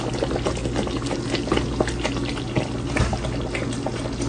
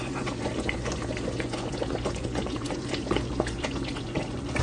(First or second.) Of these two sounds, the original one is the first